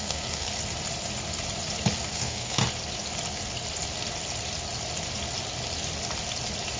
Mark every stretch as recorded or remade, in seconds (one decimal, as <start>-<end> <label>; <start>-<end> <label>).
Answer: 0.0-0.5 remade; 0.5-2.1 recorded; 2.1-2.6 remade; 2.6-6.8 recorded